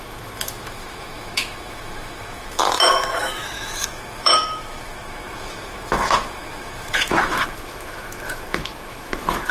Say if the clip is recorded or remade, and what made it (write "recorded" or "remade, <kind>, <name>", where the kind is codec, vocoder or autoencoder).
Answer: remade, autoencoder, DAC-VAE